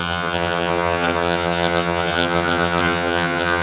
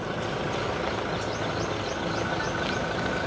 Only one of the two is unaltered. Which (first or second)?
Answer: second